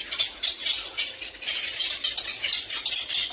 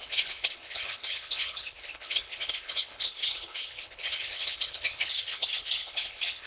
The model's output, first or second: second